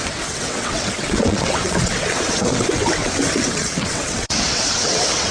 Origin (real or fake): fake